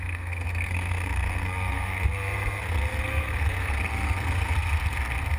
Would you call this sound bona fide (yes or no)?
no